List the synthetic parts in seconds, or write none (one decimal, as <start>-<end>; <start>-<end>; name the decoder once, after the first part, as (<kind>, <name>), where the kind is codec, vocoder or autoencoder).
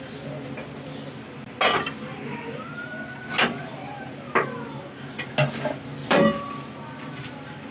6.0-7.7 (vocoder, BigVGAN v2)